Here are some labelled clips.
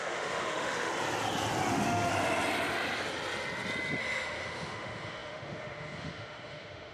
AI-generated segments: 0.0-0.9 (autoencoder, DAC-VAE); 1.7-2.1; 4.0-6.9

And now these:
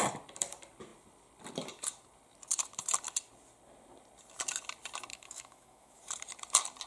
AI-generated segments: 5.1-6.0 (autoencoder, DAC-VAE)

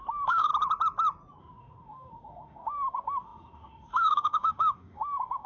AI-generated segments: 0.0-0.5 (autoencoder, DAC-VAE); 1.4-5.5

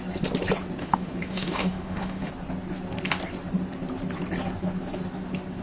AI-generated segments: 0.8-2.3 (autoencoder, DAC-VAE)

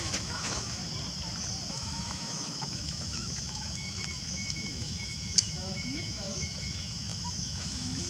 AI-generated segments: 0.0-0.8 (autoencoder, DAC-VAE); 1.7-8.1